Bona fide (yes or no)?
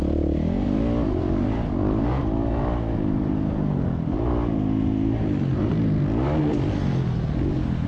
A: yes